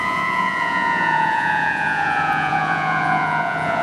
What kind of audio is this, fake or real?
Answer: fake